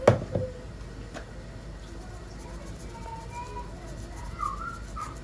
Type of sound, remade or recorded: recorded